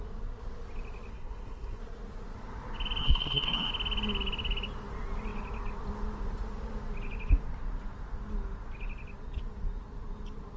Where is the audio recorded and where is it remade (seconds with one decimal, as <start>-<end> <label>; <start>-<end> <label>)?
0.0-1.1 recorded; 1.1-1.8 remade; 1.8-3.0 recorded; 3.0-3.7 remade; 3.7-10.6 recorded